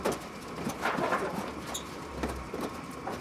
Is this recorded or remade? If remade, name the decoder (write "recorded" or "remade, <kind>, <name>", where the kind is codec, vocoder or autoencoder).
recorded